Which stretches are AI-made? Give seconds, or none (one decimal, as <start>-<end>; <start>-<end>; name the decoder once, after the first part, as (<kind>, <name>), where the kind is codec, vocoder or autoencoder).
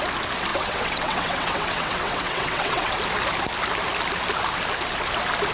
0.5-2.9 (vocoder, WaveNeXt)